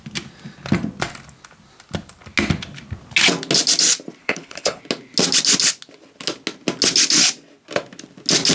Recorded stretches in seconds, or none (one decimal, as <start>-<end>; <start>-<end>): 0.0-4.2; 4.8-8.5